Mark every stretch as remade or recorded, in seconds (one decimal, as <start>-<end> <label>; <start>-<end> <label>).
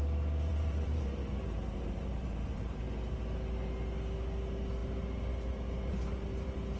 0.0-0.5 recorded; 0.5-2.8 remade; 2.8-6.8 recorded